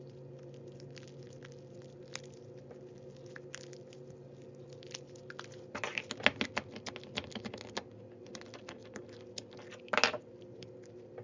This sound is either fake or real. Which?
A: real